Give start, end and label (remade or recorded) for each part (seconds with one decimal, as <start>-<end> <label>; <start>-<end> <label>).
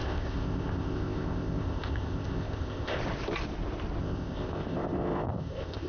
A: 0.0-3.0 remade; 3.0-4.0 recorded; 4.0-5.9 remade